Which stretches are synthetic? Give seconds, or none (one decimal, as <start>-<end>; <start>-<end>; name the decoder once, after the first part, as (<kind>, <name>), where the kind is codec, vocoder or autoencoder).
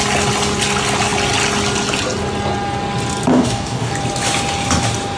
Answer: 3.3-3.9 (codec, DAC)